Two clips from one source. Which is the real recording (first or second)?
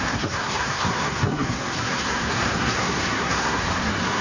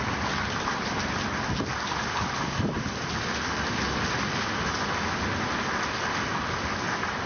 second